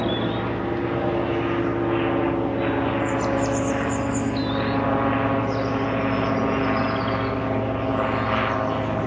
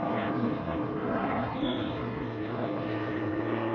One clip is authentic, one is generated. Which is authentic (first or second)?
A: first